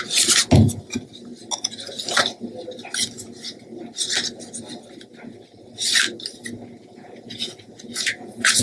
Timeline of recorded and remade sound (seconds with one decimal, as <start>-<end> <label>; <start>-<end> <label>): 0.0-6.8 recorded; 6.8-8.6 remade